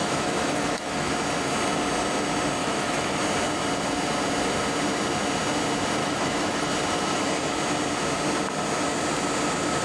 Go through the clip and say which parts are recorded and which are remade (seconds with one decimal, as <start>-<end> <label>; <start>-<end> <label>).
0.0-1.1 remade; 1.1-2.6 recorded; 2.6-3.2 remade; 3.2-6.0 recorded; 6.0-6.7 remade; 6.7-9.8 recorded